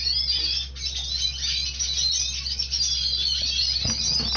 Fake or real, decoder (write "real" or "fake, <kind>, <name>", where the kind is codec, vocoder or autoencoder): real